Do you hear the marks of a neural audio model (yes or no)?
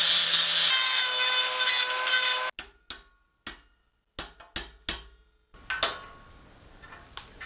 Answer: no